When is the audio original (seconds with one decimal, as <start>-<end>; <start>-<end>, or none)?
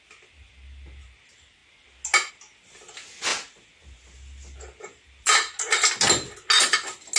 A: 0.0-7.2